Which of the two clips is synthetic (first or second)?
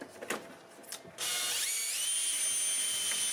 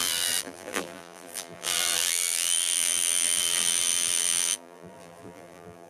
second